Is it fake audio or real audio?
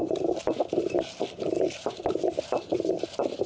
real